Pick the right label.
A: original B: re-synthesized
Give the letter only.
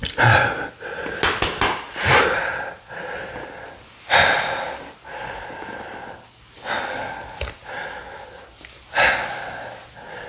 A